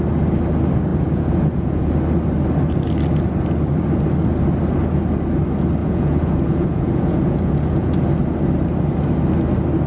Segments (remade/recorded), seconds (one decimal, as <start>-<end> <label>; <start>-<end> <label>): 0.0-0.9 recorded; 0.9-1.9 remade; 1.9-5.8 recorded; 5.8-7.9 remade; 7.9-9.9 recorded